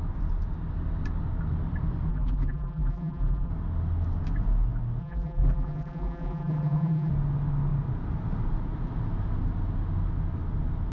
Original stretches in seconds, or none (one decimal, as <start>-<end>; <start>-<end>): 0.0-2.1; 3.5-5.0; 7.1-10.9